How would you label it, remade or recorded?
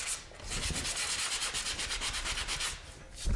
recorded